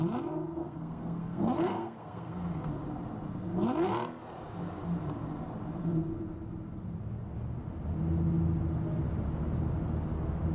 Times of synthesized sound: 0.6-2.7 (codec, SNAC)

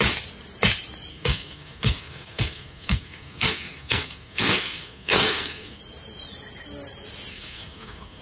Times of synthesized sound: 1.1-5.8 (codec, SNAC); 7.3-8.2

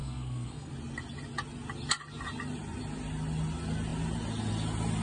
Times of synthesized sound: 0.0-0.7 (codec, SNAC)